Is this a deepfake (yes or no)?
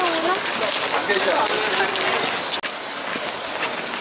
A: no